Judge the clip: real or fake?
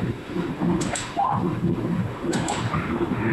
fake